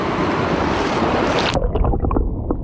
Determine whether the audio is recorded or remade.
recorded